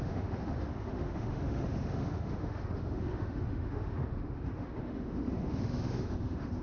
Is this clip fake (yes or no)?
yes